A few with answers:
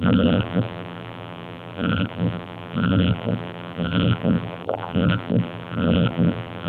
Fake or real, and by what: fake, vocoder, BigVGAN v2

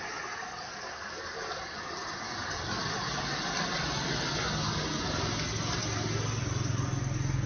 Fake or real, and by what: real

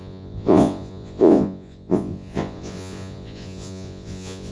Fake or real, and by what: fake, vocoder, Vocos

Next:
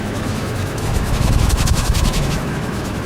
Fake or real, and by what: fake, autoencoder, DAC-VAE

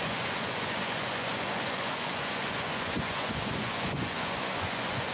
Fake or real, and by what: fake, vocoder, Vocos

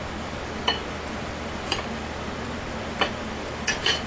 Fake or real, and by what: fake, vocoder, BigVGAN v2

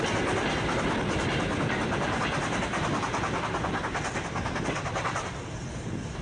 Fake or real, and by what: real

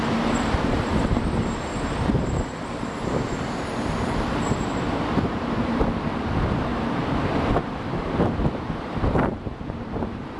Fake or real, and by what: fake, vocoder, BigVGAN v2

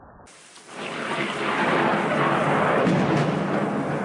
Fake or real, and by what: real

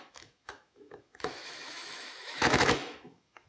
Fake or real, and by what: fake, autoencoder, DAC-VAE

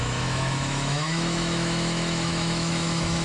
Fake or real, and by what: fake, autoencoder, DAC-VAE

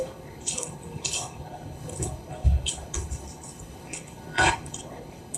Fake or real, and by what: fake, codec, HILCodec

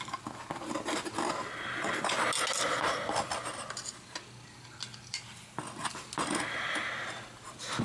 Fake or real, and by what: real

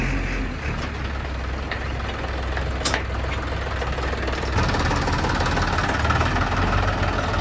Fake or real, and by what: real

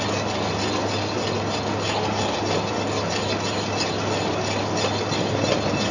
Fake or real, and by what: real